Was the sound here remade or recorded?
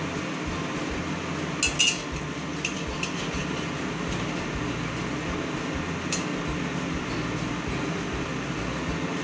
recorded